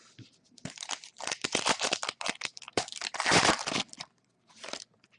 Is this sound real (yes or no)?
no